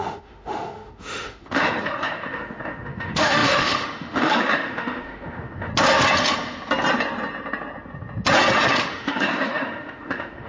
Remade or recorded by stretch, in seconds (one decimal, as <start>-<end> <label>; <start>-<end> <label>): 0.0-5.7 remade; 5.7-8.8 recorded; 8.8-10.5 remade